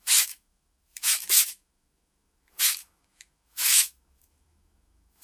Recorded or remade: remade